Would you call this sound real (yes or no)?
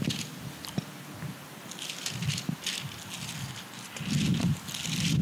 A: yes